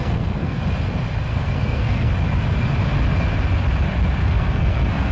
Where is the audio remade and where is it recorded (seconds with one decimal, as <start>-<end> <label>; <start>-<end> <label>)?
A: 0.0-0.6 remade; 0.6-1.3 recorded; 1.3-2.1 remade; 2.1-4.2 recorded; 4.2-5.1 remade